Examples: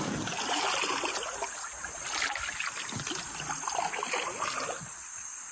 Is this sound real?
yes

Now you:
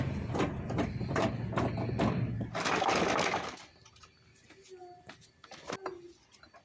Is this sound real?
yes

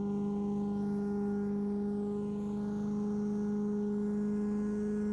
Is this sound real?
yes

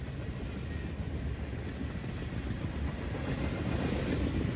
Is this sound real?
yes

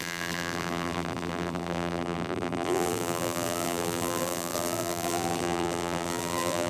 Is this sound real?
no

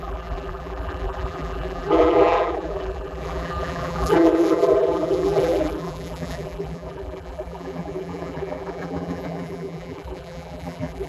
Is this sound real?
no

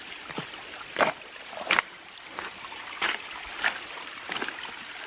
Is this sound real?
no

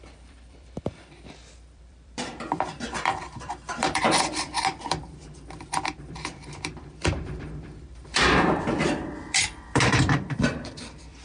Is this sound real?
no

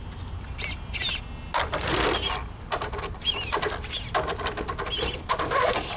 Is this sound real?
yes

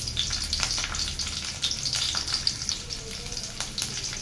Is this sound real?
yes